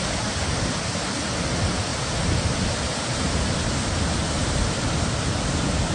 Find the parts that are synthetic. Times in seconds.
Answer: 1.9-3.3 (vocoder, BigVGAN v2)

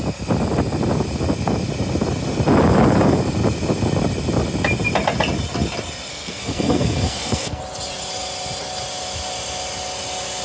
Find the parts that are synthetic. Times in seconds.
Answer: 6.1-7.6 (codec, SNAC)